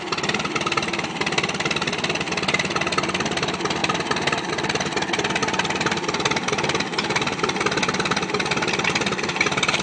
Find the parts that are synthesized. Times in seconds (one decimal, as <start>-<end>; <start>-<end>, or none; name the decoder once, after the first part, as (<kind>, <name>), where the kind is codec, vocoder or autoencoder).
3.8-4.5 (vocoder, BigVGAN v2)